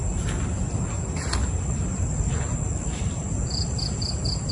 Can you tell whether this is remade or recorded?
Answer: recorded